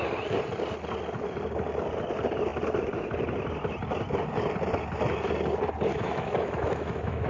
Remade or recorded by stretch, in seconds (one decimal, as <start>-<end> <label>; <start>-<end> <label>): 0.0-5.9 recorded; 5.9-7.3 remade